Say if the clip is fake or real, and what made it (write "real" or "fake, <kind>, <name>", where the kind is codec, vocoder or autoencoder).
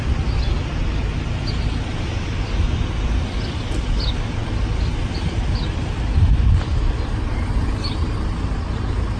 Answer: real